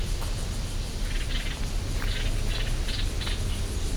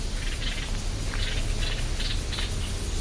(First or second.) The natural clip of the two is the second